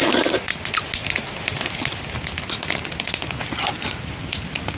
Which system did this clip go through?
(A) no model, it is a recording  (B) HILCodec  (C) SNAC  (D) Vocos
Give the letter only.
A